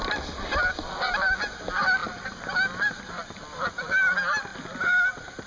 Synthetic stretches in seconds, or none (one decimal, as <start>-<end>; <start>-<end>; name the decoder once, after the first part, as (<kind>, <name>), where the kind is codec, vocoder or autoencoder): none